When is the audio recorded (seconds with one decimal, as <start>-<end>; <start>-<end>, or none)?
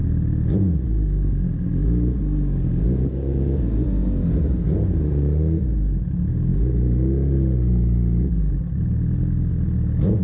0.0-10.2